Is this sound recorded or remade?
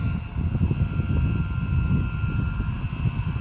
recorded